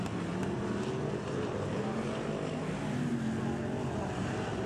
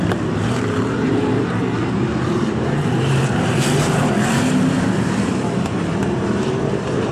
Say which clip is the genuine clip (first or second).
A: first